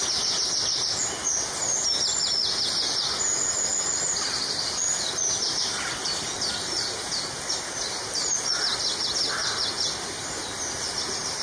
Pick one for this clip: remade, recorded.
recorded